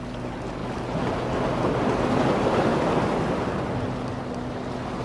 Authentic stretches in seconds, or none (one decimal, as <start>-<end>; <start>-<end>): 0.0-5.0